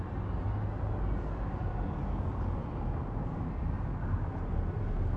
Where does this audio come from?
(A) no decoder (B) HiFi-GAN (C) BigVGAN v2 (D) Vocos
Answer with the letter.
A